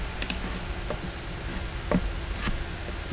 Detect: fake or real real